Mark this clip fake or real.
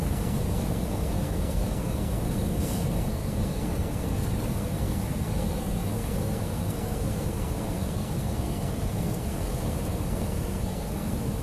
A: fake